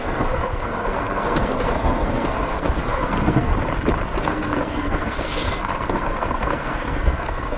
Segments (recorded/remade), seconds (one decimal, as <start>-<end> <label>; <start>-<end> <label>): 0.0-3.5 remade; 3.5-4.2 recorded; 4.2-7.6 remade